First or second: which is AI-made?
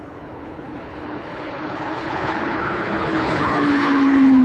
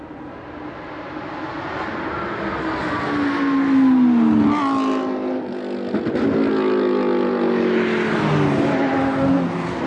first